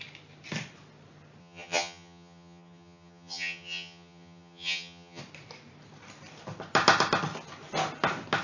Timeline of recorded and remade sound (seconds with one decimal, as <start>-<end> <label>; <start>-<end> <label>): 0.0-1.4 recorded; 1.4-5.2 remade; 5.2-8.4 recorded